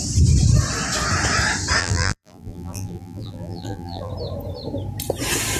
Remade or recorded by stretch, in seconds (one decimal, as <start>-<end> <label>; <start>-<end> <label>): 0.0-1.8 recorded; 1.8-4.1 remade; 4.1-5.6 recorded